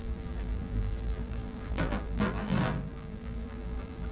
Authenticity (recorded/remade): remade